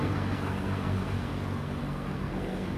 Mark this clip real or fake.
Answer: fake